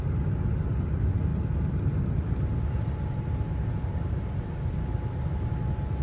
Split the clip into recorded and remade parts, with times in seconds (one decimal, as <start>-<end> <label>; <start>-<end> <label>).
0.0-6.0 recorded

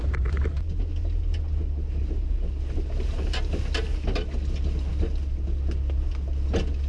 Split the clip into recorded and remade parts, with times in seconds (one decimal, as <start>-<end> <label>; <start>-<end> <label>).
0.0-6.9 recorded

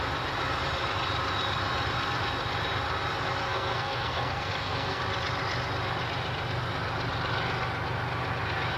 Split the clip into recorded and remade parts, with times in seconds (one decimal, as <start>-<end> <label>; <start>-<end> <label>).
0.0-3.4 recorded; 3.4-5.0 remade; 5.0-8.8 recorded

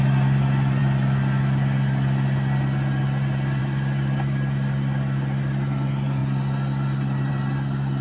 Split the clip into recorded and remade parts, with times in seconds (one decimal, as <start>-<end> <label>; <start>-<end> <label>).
0.0-8.0 recorded

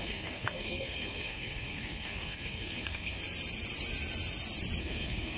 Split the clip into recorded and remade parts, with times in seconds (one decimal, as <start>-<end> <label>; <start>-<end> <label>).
0.0-3.2 remade; 3.2-4.8 recorded; 4.8-5.4 remade